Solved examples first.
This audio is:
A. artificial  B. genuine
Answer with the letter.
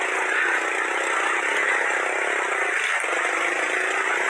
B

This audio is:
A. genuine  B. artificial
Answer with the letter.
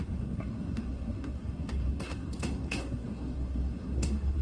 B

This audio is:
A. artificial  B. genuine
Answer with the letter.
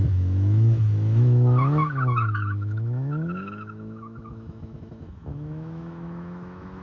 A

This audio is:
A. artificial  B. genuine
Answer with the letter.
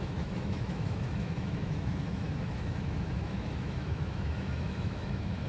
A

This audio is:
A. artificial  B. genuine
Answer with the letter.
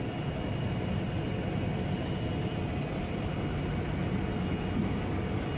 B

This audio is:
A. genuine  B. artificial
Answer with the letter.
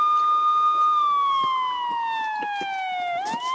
A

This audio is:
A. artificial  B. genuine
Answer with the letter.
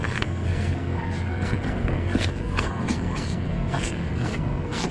A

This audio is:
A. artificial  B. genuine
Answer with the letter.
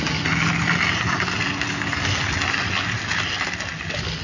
B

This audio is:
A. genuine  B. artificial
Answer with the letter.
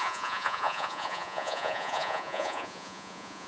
B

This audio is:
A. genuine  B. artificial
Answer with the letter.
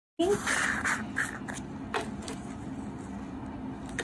A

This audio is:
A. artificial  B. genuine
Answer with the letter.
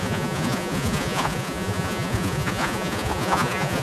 A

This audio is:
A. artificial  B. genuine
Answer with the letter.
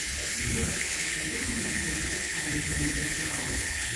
A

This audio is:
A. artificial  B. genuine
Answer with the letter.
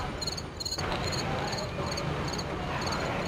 B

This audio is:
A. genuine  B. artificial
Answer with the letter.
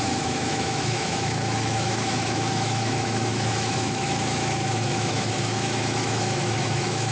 B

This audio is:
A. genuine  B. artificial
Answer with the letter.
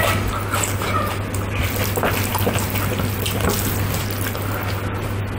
A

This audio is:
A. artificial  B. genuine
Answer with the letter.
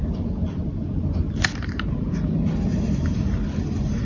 B